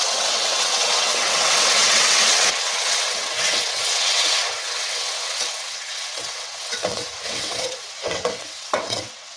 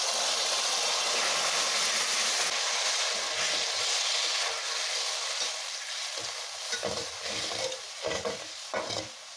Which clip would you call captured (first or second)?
second